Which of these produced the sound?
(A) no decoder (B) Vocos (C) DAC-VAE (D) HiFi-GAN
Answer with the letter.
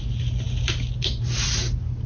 A